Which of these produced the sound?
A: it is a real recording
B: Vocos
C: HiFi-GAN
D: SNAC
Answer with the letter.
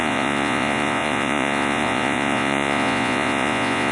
B